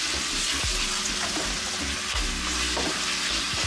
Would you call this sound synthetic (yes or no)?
no